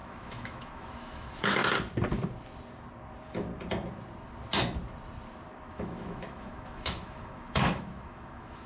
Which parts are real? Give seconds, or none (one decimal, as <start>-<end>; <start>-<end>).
1.6-5.7